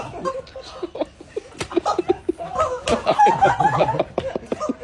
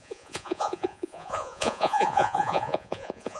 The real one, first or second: first